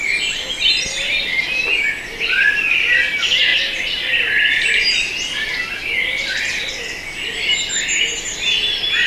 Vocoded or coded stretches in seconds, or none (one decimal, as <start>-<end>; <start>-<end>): none